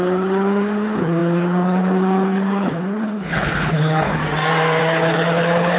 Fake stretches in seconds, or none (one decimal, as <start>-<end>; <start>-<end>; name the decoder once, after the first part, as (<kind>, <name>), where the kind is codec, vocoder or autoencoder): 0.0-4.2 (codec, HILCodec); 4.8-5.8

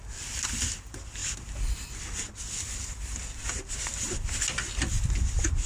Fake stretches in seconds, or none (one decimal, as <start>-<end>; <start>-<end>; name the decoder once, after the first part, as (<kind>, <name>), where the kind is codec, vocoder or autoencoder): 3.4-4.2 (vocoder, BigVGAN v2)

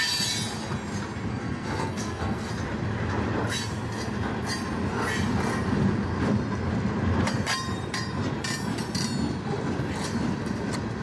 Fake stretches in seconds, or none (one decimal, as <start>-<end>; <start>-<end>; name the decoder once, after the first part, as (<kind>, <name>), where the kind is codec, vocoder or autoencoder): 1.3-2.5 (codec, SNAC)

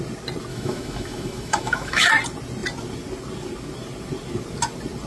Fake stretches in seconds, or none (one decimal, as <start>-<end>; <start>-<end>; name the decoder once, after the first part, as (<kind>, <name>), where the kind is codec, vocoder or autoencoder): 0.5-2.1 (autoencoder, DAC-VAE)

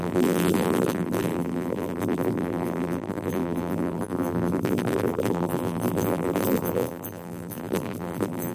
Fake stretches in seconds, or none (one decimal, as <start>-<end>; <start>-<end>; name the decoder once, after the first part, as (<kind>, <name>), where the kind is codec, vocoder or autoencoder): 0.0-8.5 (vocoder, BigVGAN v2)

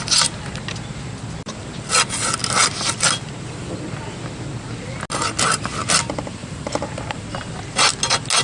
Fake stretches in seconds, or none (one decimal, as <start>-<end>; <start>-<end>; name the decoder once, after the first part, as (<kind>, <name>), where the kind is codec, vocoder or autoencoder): 6.4-7.5 (vocoder, BigVGAN v2)